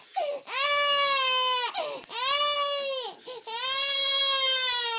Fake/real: real